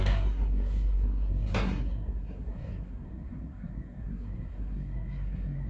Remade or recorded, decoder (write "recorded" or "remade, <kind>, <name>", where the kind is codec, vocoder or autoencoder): remade, codec, SNAC